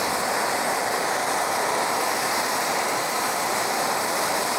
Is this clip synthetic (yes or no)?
yes